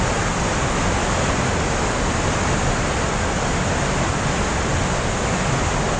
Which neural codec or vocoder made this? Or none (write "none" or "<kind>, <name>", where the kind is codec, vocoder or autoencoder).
none